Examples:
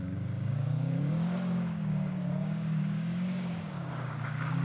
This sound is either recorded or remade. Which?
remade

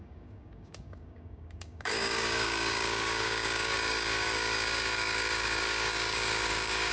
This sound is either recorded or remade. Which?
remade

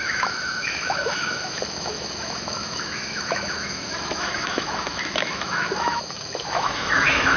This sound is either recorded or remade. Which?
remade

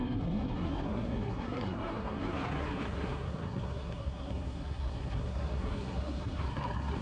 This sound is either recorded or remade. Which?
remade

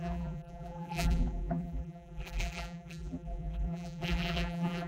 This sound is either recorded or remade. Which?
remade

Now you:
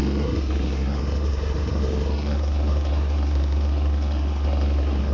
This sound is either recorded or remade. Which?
remade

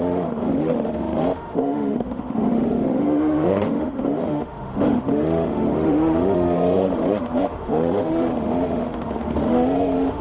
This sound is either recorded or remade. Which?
remade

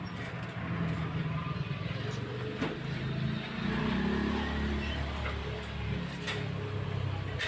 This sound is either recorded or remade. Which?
recorded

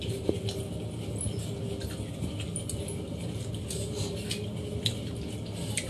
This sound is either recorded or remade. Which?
recorded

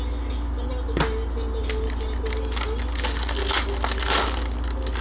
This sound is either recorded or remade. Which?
recorded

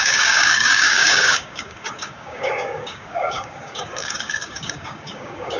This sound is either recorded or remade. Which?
remade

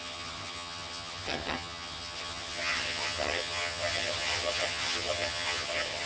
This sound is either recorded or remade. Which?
remade